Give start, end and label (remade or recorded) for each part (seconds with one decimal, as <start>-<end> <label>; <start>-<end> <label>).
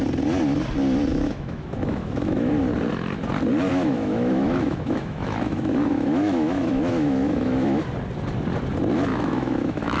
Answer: 0.0-1.1 recorded; 1.1-2.5 remade; 2.5-3.7 recorded; 3.7-7.8 remade; 7.8-9.1 recorded; 9.1-10.0 remade